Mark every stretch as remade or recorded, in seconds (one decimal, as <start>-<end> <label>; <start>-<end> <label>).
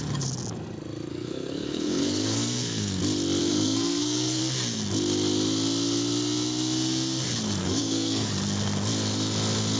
0.0-1.1 recorded; 1.1-3.0 remade; 3.0-3.4 recorded; 3.4-4.4 remade; 4.4-7.6 recorded; 7.6-8.3 remade; 8.3-9.8 recorded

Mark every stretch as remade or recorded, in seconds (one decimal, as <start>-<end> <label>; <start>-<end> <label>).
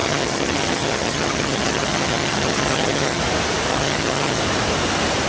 0.0-3.2 remade; 3.2-3.7 recorded; 3.7-4.4 remade; 4.4-5.3 recorded